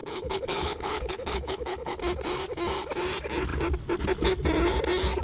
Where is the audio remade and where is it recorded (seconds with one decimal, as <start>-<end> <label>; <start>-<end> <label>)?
0.0-2.0 remade; 2.0-5.2 recorded